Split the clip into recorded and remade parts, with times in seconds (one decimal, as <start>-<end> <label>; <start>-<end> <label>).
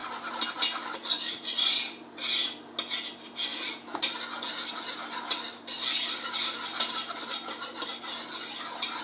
0.0-9.0 recorded